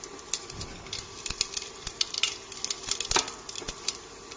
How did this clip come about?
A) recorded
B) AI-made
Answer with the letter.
A